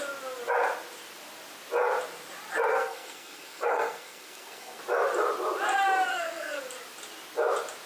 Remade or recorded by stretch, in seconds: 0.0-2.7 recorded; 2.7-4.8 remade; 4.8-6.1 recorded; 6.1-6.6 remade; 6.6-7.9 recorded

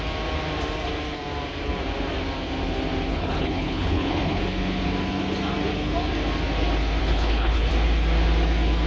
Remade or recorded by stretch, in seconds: 0.0-3.1 recorded; 3.1-4.4 remade; 4.4-7.0 recorded; 7.0-7.7 remade; 7.7-8.9 recorded

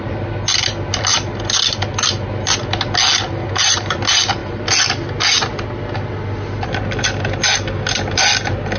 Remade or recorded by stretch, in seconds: 0.0-8.8 recorded

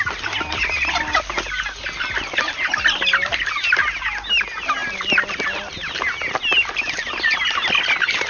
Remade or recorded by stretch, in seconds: 0.0-8.3 recorded

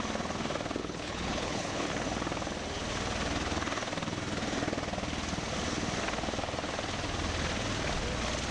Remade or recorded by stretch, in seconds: 0.0-0.8 recorded; 0.8-1.9 remade; 1.9-8.5 recorded